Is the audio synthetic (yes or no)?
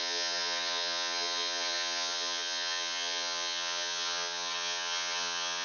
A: yes